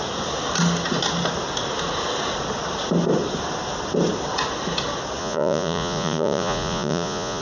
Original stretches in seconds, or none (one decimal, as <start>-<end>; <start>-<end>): 0.0-5.2

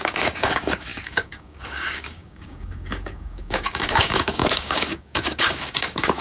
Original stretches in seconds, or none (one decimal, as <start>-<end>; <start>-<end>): none

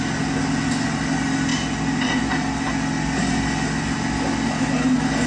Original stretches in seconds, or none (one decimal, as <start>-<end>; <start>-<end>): 0.0-5.3

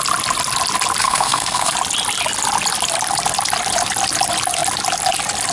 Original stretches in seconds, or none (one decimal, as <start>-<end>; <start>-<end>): 0.0-1.0; 1.7-5.5

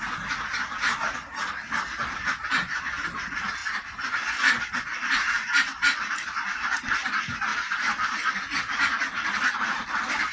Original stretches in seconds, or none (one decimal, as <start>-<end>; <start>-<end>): 0.0-10.3

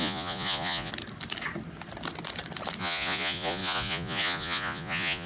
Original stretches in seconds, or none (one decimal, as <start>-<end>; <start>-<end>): 0.9-2.8